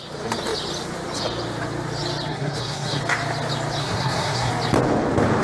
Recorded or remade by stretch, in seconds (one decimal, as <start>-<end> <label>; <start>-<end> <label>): 0.0-2.3 recorded; 2.3-3.0 remade; 3.0-3.8 recorded; 3.8-4.5 remade; 4.5-5.4 recorded